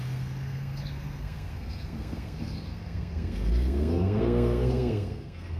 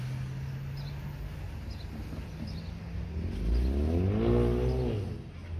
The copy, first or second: first